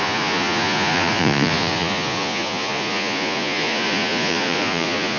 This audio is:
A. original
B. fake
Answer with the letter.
B